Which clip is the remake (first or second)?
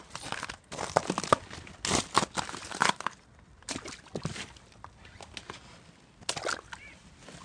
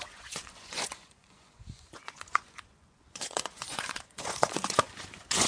second